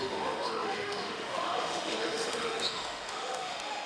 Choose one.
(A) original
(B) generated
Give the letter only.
B